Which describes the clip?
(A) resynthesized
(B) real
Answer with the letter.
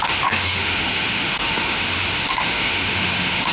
A